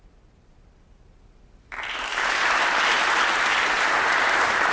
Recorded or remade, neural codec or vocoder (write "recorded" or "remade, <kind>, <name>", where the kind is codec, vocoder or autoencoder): recorded